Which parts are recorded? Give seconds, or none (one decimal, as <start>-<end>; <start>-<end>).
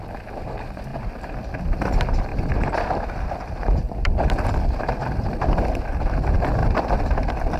0.0-0.9; 1.5-2.3; 5.8-7.6